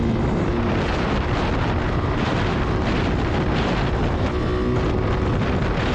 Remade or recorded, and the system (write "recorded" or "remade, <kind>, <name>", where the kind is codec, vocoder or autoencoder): recorded